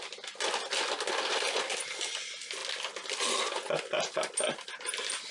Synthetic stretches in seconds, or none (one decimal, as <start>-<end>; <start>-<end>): none